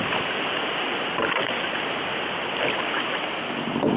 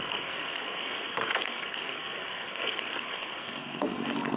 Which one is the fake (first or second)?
second